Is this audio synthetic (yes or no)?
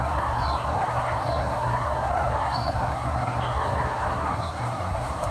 yes